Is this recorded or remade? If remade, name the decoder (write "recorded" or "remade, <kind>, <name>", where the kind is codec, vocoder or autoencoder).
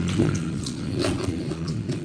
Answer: remade, vocoder, Vocos